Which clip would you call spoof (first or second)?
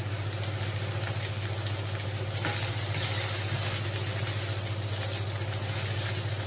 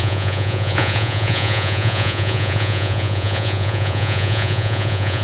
second